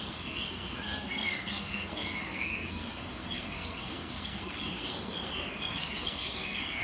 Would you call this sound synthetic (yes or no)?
yes